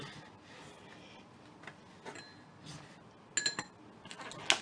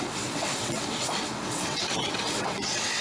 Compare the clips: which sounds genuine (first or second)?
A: first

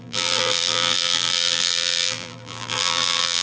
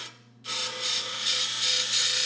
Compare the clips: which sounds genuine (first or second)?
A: second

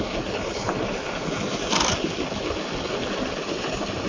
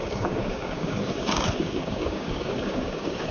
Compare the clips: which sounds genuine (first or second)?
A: first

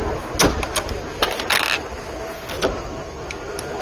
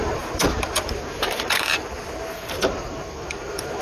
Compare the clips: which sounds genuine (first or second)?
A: first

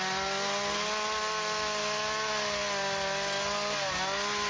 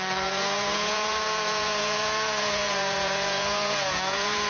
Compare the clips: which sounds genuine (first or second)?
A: first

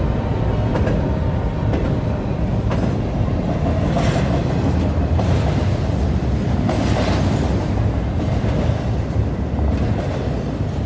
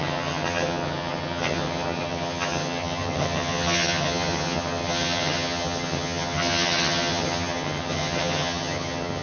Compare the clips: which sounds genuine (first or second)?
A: first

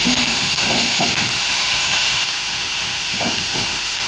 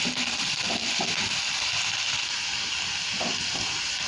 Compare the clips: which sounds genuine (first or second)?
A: second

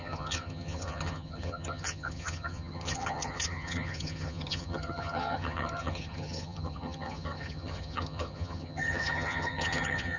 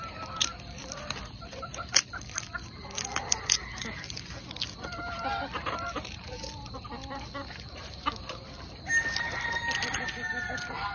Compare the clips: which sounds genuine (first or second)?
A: second